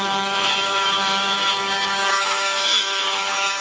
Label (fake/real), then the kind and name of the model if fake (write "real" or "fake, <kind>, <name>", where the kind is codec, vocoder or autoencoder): fake, autoencoder, DAC-VAE